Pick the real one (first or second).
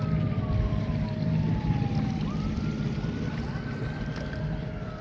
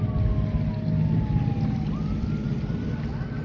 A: second